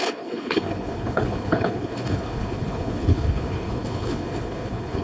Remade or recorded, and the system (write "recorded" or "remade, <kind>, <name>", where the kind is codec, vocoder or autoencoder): remade, codec, HILCodec